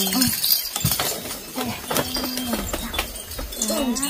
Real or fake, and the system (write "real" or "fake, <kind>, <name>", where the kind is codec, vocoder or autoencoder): real